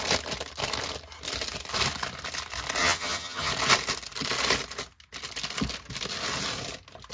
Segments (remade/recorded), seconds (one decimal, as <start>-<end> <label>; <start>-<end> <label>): 0.0-2.8 recorded; 2.8-3.5 remade; 3.5-7.1 recorded

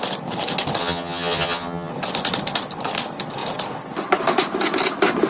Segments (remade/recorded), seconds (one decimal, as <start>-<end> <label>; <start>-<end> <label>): 0.0-0.8 recorded; 0.8-1.9 remade; 1.9-5.3 recorded